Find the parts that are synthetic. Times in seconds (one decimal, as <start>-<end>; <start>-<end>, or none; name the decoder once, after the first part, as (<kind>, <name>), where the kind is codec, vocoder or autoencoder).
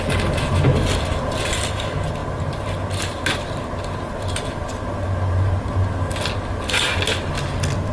none